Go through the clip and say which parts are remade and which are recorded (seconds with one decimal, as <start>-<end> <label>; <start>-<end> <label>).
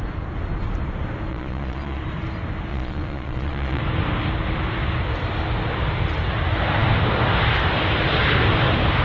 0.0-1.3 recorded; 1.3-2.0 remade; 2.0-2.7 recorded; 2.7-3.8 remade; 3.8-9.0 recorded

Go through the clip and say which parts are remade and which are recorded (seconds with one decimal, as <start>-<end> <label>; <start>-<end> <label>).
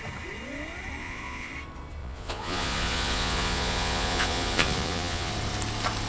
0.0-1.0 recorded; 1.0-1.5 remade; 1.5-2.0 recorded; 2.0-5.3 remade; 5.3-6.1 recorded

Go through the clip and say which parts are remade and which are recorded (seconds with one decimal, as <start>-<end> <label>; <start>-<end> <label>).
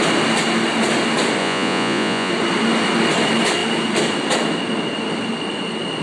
0.0-1.4 recorded; 1.4-2.3 remade; 2.3-6.0 recorded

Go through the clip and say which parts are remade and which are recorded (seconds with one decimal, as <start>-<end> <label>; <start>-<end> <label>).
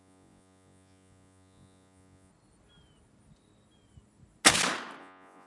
0.0-2.3 remade; 2.3-5.0 recorded; 5.0-5.5 remade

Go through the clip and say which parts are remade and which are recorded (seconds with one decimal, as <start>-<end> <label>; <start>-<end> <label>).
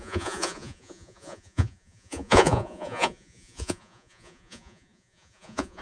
0.0-5.8 remade